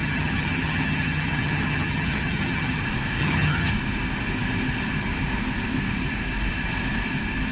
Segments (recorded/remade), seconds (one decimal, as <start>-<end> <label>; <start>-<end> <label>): 0.0-2.8 remade; 2.8-3.2 recorded; 3.2-3.7 remade; 3.7-7.5 recorded